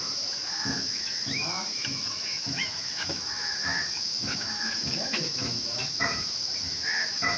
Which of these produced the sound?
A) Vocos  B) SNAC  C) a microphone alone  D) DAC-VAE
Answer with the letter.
D